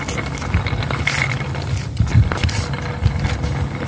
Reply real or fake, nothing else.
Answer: real